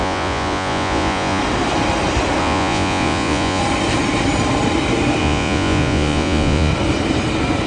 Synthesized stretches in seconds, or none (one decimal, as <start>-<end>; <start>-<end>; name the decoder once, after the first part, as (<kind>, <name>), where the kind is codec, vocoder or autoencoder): 0.0-1.4 (vocoder, Vocos); 2.4-3.6; 5.2-6.7